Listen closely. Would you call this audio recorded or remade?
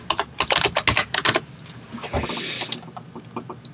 recorded